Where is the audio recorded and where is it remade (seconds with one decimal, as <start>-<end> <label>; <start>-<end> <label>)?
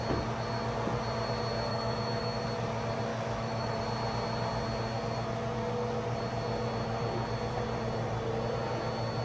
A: 0.0-1.7 recorded; 1.7-2.4 remade; 2.4-3.1 recorded; 3.1-3.8 remade; 3.8-9.2 recorded